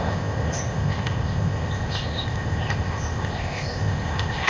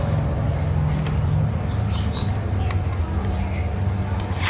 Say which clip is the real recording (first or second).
second